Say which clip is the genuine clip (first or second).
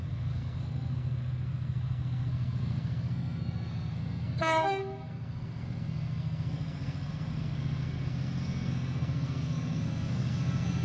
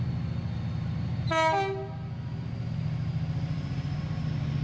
second